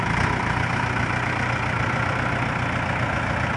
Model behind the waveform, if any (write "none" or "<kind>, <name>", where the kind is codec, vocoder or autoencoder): none